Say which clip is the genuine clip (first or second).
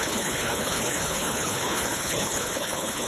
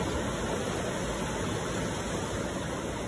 second